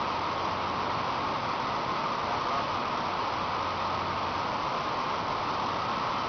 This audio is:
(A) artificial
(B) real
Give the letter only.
B